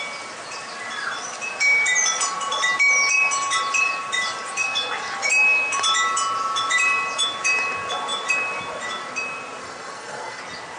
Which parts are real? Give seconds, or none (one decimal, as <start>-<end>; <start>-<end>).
0.0-9.6; 10.4-10.8